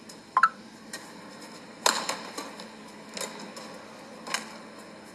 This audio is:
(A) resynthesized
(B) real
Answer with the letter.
B